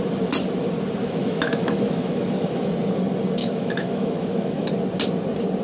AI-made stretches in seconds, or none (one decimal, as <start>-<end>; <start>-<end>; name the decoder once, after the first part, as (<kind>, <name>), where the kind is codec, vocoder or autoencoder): 1.0-2.7 (autoencoder, DAC-VAE); 3.4-4.7